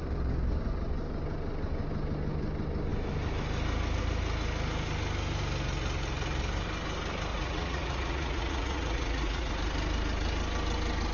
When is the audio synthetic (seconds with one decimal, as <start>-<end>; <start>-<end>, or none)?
7.3-9.5